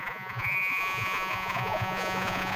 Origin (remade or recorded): remade